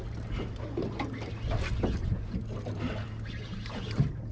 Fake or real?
real